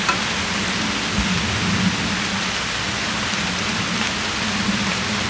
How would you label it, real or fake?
real